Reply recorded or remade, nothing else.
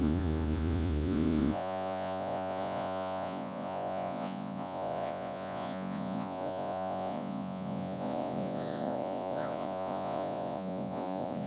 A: remade